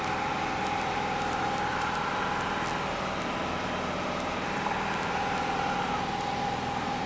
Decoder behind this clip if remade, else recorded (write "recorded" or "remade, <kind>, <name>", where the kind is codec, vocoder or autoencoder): recorded